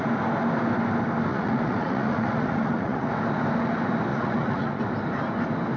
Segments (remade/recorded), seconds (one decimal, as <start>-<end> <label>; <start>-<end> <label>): 0.0-1.3 recorded; 1.3-3.1 remade; 3.1-4.1 recorded; 4.1-4.8 remade; 4.8-5.8 recorded